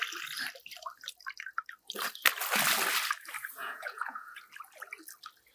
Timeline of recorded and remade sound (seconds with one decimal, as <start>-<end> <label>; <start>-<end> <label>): 0.0-3.4 recorded; 3.4-4.4 remade; 4.4-5.5 recorded